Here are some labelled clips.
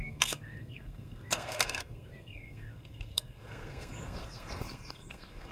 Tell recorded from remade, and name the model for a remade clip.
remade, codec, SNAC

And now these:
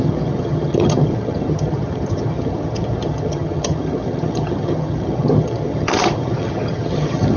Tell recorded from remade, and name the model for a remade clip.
remade, vocoder, HiFi-GAN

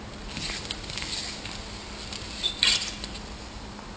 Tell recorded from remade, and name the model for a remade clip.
recorded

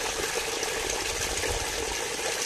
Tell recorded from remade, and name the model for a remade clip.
recorded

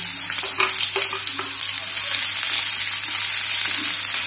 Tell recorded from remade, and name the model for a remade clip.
recorded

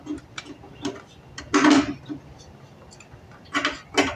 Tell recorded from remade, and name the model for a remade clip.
recorded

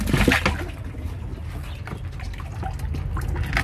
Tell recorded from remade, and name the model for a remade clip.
recorded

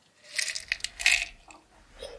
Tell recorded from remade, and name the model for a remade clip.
recorded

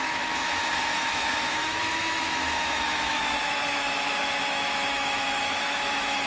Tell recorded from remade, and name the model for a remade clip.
remade, autoencoder, DAC-VAE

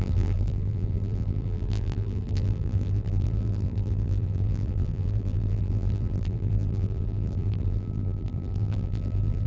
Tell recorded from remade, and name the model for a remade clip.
remade, vocoder, BigVGAN v2